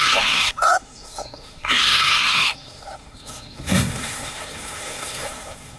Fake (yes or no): yes